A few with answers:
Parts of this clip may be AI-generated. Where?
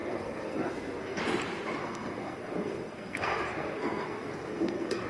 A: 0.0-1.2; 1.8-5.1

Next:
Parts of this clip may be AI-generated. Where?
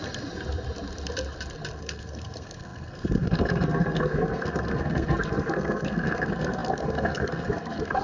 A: 1.8-8.0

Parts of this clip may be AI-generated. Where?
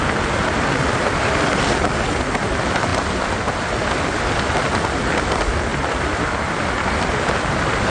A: none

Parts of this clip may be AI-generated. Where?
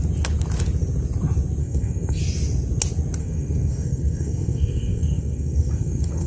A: 1.6-2.2; 3.2-6.3